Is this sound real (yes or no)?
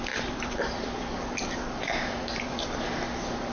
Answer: no